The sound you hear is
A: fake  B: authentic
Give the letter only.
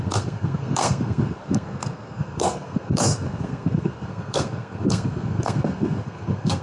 A